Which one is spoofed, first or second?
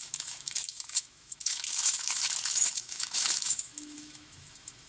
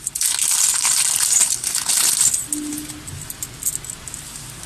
first